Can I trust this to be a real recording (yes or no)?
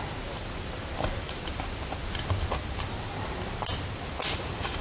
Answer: yes